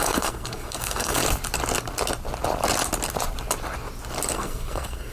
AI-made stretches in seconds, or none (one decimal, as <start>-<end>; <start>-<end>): 0.0-1.2; 4.3-5.1